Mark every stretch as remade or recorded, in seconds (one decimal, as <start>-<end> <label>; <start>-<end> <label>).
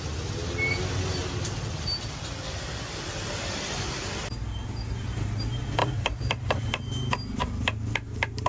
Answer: 0.0-1.2 recorded; 1.2-3.7 remade; 3.7-5.8 recorded; 5.8-6.7 remade; 6.7-8.5 recorded